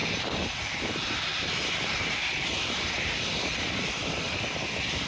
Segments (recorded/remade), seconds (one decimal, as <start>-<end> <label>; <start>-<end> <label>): 0.0-0.6 recorded; 0.6-5.1 remade